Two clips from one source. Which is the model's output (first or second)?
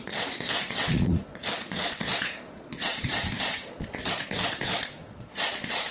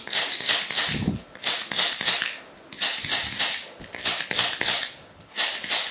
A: first